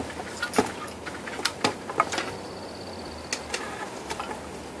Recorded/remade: recorded